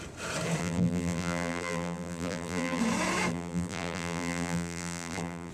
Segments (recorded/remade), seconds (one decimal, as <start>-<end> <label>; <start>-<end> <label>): 0.0-0.6 recorded; 0.6-2.8 remade; 2.8-3.3 recorded; 3.3-5.5 remade